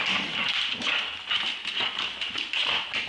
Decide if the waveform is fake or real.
real